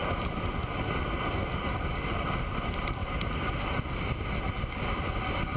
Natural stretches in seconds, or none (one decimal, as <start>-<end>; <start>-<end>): 0.0-5.6